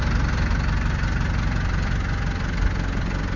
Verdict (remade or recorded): recorded